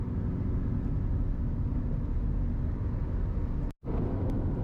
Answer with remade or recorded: recorded